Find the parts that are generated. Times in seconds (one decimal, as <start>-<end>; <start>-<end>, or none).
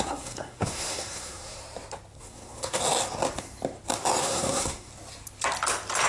0.0-1.6; 2.2-2.8; 4.2-4.9